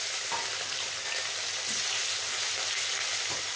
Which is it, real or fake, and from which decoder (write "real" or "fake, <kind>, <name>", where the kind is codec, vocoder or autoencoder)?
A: real